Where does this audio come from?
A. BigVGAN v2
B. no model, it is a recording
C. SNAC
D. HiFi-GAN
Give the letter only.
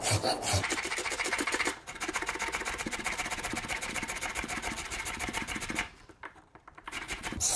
A